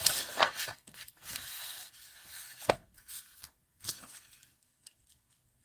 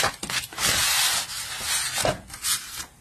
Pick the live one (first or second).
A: second